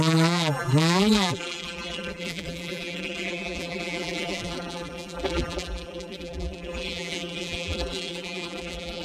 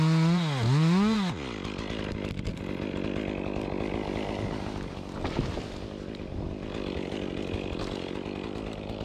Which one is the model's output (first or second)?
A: first